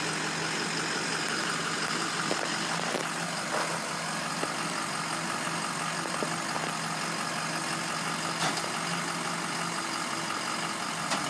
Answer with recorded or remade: recorded